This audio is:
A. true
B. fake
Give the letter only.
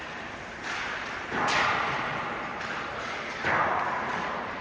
B